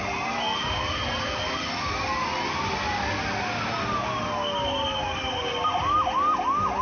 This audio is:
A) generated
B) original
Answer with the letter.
B